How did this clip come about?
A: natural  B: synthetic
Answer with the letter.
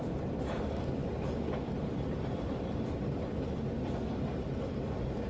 A